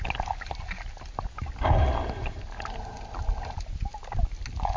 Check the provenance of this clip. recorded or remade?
recorded